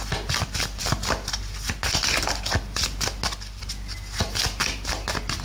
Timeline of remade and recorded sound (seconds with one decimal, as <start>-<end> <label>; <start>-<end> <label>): 0.0-5.4 recorded